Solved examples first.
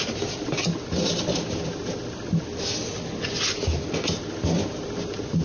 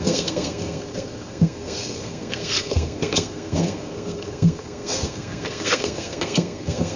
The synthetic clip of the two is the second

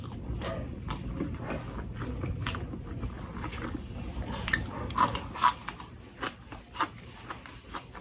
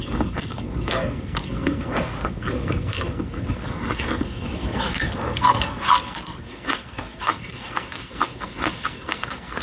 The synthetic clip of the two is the second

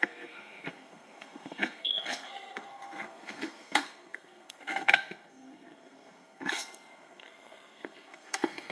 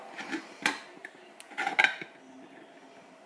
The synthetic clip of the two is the first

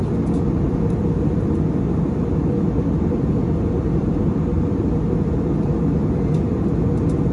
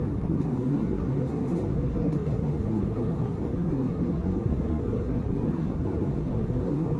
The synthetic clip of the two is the second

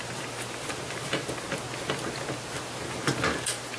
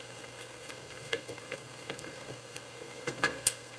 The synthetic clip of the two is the second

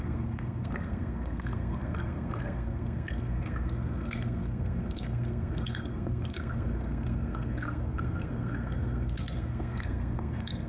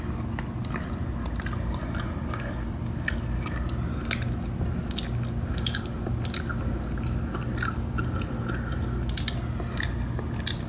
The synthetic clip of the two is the first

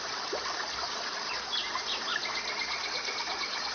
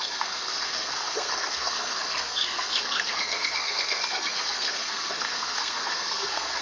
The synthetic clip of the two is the second